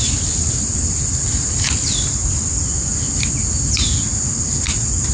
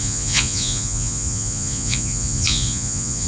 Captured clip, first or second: first